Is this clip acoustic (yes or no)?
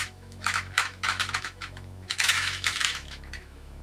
no